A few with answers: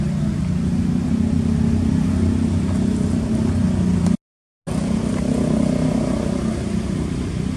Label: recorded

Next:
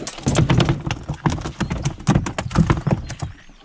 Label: recorded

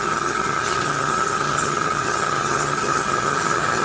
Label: remade